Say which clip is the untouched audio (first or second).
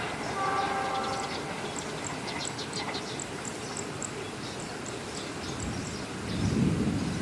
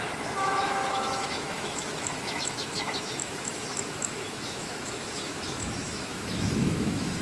first